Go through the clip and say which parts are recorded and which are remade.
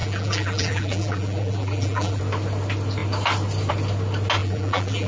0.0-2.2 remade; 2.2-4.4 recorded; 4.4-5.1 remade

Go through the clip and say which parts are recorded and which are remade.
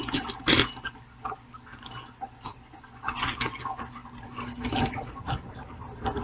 0.0-6.2 recorded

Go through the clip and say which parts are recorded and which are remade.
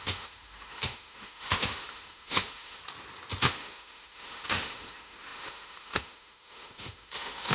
0.0-2.8 remade; 2.8-3.4 recorded; 3.4-7.5 remade